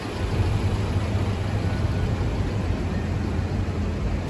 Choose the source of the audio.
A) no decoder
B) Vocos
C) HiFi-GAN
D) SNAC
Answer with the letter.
A